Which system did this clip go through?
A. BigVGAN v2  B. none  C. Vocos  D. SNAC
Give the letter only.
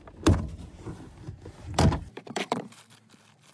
A